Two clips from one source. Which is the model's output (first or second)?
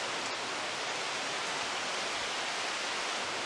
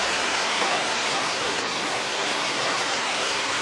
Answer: second